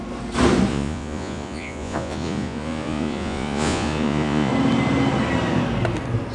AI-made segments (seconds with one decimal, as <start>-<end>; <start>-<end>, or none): 0.7-4.5